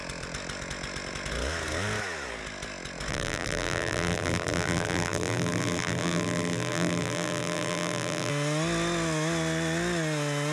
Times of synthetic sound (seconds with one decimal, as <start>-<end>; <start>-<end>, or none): 3.1-8.3